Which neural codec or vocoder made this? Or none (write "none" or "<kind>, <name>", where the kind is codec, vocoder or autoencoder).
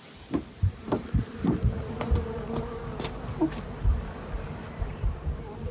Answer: vocoder, BigVGAN v2